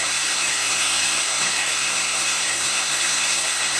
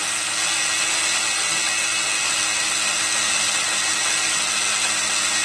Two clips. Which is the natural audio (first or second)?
second